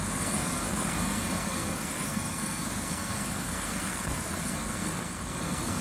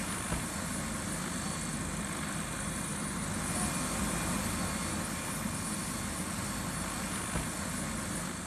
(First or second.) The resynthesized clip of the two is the first